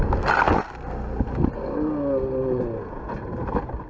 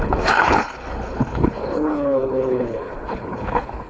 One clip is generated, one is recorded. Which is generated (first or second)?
second